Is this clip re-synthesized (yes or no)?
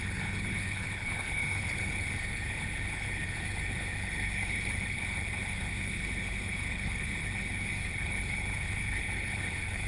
yes